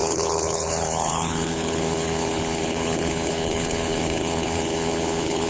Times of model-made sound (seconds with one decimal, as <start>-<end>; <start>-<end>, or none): 0.0-5.5